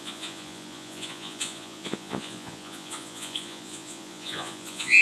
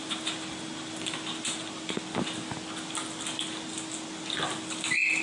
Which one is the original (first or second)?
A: second